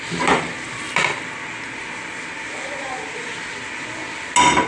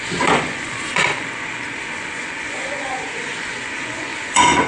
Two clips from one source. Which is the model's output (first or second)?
second